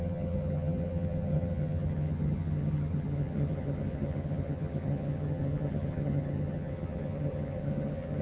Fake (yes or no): yes